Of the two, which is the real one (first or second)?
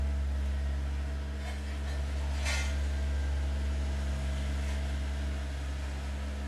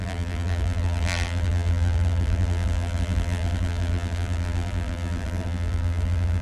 first